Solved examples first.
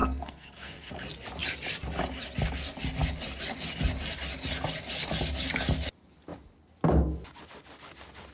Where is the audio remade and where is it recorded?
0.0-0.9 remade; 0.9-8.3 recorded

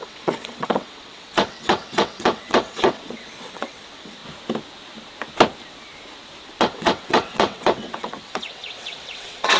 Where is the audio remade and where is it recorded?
0.0-4.2 remade; 4.2-6.6 recorded; 6.6-9.6 remade

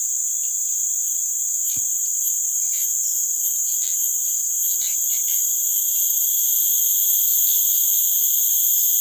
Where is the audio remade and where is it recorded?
0.0-3.1 recorded; 3.1-6.5 remade; 6.5-9.0 recorded

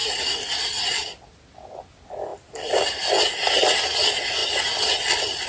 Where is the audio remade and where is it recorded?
0.0-5.5 recorded